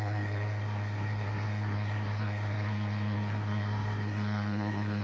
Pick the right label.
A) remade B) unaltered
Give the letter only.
A